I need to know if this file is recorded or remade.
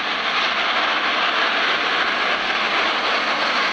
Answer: recorded